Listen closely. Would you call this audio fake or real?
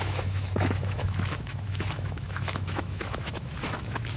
fake